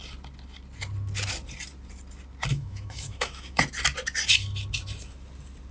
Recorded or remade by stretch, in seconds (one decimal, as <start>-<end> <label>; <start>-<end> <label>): 0.0-2.5 recorded; 2.5-3.6 remade; 3.6-5.7 recorded

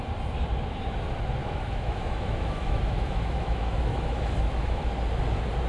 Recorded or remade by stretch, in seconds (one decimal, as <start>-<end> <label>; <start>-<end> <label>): 0.0-1.4 recorded; 1.4-4.8 remade; 4.8-5.7 recorded

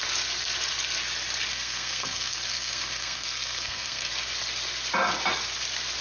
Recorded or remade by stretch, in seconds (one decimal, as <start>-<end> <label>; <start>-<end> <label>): 0.0-1.5 recorded; 1.5-4.1 remade; 4.1-6.0 recorded

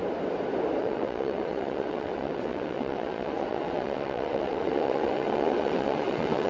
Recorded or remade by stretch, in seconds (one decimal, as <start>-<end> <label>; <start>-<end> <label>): 0.0-0.8 recorded; 0.8-6.5 remade

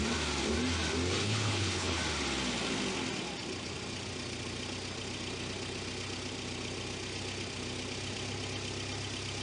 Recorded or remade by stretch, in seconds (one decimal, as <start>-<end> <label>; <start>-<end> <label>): 0.0-1.2 recorded; 1.2-2.0 remade; 2.0-9.4 recorded